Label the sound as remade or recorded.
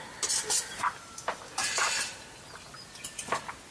recorded